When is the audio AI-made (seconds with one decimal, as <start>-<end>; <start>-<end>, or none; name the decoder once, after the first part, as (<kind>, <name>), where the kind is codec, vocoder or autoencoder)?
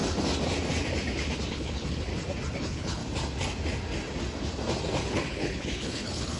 1.5-2.1 (codec, HILCodec); 2.6-3.0; 5.0-6.4